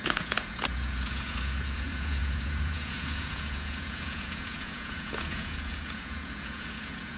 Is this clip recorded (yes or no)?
no